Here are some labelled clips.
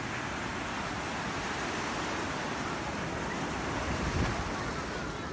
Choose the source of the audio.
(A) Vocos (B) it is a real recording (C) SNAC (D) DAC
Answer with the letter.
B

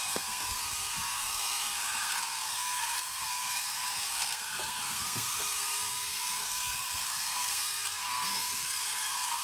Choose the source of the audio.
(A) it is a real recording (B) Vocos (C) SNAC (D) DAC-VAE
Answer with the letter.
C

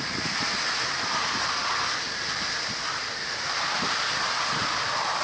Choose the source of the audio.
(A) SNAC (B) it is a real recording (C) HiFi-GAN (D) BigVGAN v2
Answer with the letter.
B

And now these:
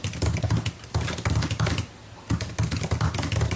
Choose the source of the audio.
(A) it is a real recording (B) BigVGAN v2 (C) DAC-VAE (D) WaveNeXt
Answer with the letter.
A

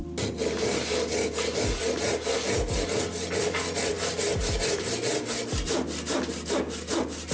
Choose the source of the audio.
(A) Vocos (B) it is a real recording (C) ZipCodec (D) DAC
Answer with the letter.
B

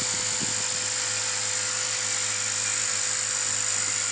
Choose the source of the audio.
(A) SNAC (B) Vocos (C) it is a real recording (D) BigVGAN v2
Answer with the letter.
C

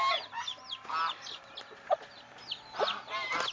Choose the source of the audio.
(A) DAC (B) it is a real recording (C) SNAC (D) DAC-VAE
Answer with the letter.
B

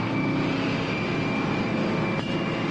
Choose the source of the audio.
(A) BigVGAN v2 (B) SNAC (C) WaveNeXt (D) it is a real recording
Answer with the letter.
D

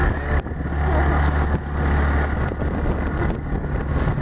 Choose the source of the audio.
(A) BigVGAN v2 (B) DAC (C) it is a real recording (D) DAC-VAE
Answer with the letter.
C